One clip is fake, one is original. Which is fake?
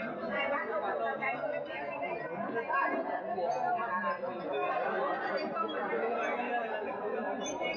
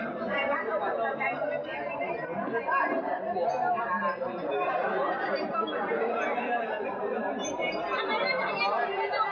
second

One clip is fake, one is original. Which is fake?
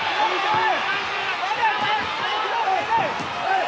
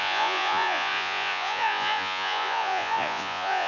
second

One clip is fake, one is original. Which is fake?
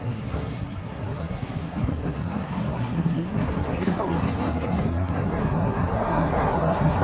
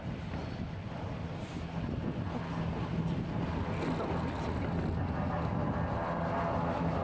first